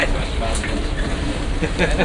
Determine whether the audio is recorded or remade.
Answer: recorded